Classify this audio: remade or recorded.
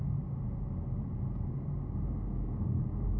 recorded